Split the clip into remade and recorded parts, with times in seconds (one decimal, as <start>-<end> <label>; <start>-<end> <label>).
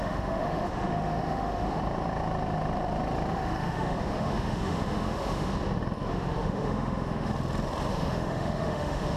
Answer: 0.0-1.8 remade; 1.8-3.3 recorded; 3.3-5.5 remade; 5.5-6.1 recorded; 6.1-7.3 remade; 7.3-7.9 recorded; 7.9-9.2 remade